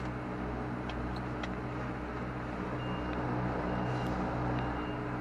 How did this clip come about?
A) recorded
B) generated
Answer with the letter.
A